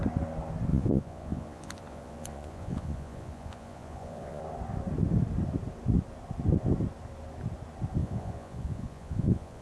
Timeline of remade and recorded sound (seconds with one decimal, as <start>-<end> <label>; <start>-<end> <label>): 0.0-0.7 recorded; 0.7-4.4 remade; 4.4-8.0 recorded; 8.0-9.6 remade